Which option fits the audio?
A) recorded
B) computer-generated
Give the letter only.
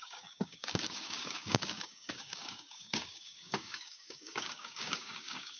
B